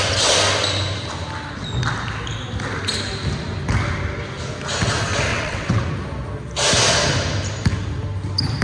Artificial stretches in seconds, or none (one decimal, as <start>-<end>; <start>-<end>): 5.3-5.8